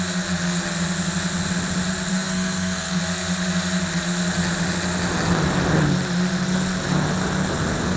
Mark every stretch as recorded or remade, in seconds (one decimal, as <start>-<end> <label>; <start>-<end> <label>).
0.0-2.1 recorded; 2.1-3.0 remade; 3.0-8.0 recorded